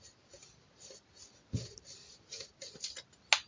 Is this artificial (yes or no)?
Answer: no